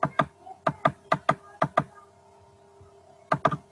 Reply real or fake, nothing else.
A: real